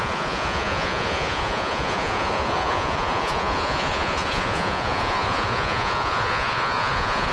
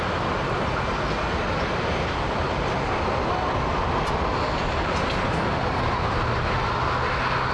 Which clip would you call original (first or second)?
second